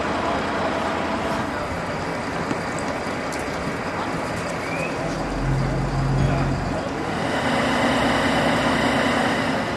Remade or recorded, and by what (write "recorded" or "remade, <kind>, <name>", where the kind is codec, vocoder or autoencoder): recorded